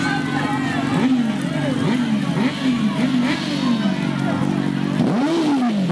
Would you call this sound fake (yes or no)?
no